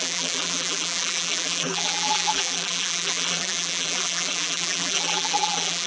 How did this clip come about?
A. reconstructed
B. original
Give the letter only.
A